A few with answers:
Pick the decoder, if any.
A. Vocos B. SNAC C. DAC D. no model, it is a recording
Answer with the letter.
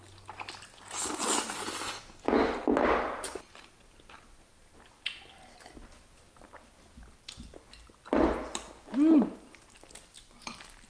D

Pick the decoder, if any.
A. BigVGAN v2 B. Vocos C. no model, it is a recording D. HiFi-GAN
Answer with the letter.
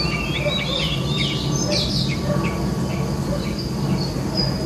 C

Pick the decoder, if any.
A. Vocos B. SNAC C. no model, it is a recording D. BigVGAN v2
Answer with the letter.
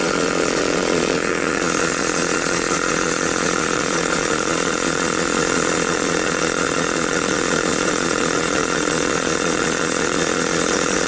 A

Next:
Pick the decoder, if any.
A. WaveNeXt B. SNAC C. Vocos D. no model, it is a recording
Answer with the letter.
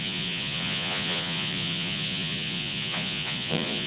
C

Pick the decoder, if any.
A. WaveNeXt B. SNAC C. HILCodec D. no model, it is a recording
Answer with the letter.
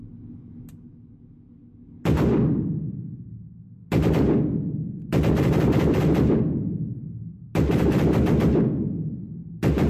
D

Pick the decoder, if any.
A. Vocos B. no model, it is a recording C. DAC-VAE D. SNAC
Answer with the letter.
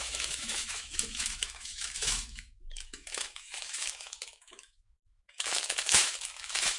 C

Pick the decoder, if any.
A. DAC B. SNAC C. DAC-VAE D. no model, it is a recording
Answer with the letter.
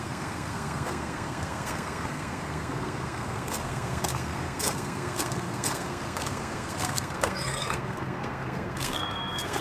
B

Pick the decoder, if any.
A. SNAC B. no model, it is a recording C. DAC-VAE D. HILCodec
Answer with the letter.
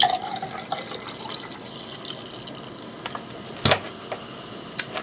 B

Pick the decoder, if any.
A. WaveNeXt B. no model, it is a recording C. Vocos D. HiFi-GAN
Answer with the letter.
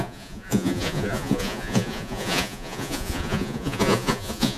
C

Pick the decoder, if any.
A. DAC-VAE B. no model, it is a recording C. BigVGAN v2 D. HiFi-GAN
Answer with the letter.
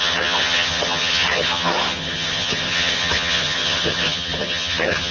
D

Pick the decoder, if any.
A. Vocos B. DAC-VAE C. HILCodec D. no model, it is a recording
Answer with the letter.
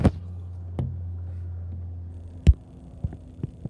D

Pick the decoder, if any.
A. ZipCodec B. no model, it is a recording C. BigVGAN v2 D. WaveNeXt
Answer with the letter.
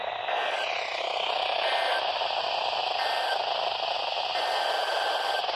B